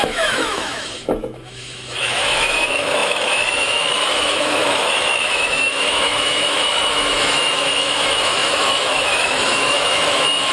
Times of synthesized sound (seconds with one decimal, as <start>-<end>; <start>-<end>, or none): 0.0-10.5

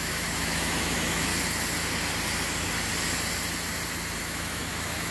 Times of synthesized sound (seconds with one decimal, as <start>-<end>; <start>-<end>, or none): 0.0-1.3; 4.2-5.1